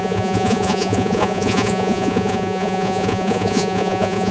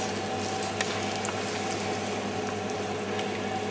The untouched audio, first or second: second